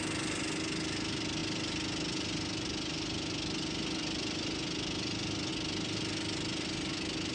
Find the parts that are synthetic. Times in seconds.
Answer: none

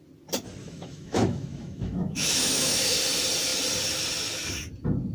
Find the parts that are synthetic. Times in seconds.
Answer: 0.6-3.0 (autoencoder, DAC-VAE)